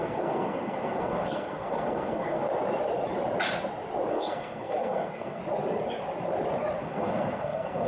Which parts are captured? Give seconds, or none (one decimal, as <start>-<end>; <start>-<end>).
2.5-4.1; 5.4-6.8